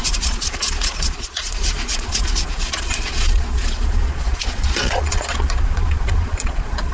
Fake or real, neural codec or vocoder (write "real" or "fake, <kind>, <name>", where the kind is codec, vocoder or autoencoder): fake, vocoder, Vocos